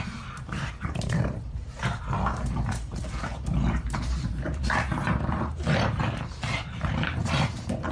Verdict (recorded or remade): remade